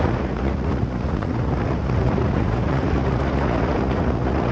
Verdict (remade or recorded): remade